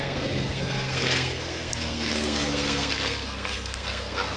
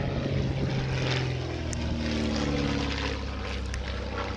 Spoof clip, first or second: first